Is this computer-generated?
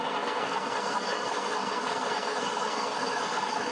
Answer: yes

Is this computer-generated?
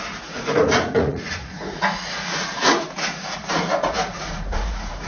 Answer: yes